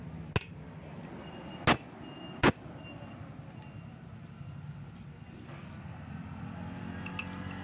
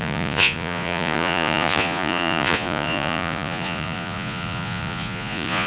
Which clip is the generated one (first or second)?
second